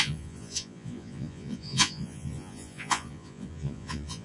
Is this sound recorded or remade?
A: remade